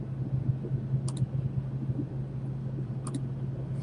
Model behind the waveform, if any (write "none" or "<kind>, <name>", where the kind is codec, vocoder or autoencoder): none